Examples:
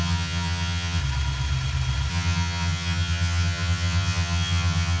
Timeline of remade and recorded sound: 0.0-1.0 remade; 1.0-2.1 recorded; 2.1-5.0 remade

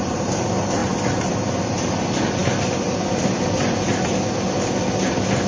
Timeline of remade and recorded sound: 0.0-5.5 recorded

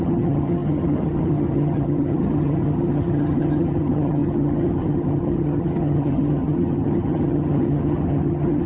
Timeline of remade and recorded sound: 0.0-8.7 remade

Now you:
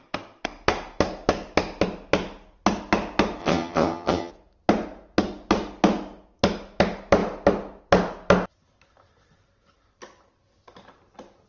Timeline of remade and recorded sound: 0.0-3.4 recorded; 3.4-4.3 remade; 4.3-11.5 recorded